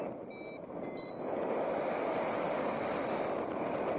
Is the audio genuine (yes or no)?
yes